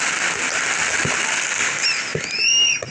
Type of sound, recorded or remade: recorded